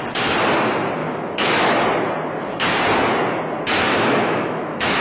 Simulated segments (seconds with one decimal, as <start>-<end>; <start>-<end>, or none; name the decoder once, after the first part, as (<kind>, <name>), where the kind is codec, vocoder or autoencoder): 1.0-1.7 (autoencoder, DAC-VAE); 3.9-5.0